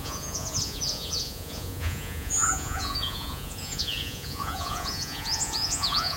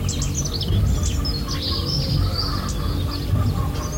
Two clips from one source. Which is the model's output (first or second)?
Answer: first